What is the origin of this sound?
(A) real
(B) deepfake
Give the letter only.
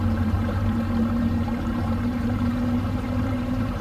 B